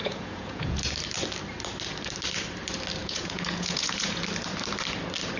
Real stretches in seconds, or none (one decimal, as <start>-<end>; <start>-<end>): 0.8-3.0; 4.2-5.4